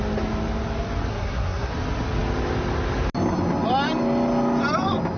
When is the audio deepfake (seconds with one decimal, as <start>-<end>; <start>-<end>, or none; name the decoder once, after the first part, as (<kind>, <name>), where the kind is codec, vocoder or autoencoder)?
1.1-1.7 (codec, SNAC)